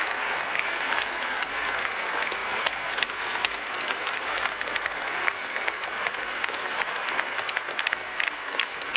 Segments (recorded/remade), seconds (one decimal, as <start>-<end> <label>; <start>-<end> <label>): 0.0-9.0 remade

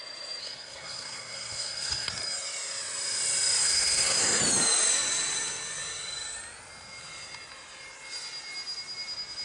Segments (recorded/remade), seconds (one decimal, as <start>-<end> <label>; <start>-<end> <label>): 0.0-0.4 recorded; 0.4-2.1 remade; 2.1-3.6 recorded; 3.6-4.4 remade; 4.4-9.4 recorded

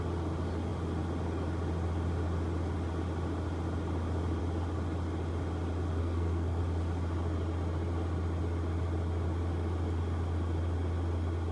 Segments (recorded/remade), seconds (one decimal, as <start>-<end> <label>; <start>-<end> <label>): 0.0-6.0 recorded; 6.0-6.6 remade; 6.6-11.5 recorded

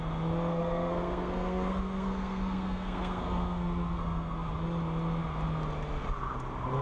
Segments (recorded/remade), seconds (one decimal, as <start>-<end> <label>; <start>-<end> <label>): 0.0-0.5 recorded; 0.5-4.5 remade; 4.5-6.8 recorded

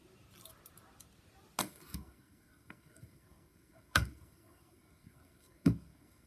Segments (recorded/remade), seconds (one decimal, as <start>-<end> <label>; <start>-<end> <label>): 0.0-1.6 recorded; 1.6-6.3 remade

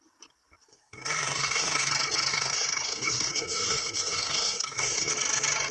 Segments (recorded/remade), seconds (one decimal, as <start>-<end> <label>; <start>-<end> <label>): 0.0-0.7 recorded; 0.7-1.9 remade; 1.9-2.3 recorded; 2.3-5.1 remade; 5.1-5.7 recorded

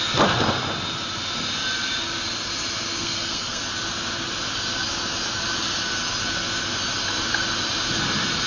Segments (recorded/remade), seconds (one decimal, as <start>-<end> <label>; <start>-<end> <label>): 0.0-3.0 recorded; 3.0-3.6 remade; 3.6-8.5 recorded